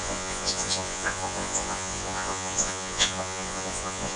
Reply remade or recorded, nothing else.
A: remade